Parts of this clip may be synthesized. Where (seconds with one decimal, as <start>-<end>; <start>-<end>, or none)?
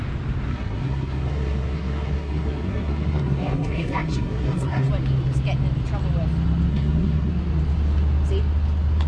0.5-4.9; 6.7-7.3